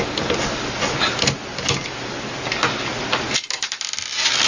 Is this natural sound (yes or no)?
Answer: yes